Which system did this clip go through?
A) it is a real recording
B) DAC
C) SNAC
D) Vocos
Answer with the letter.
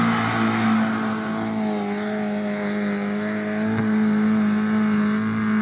A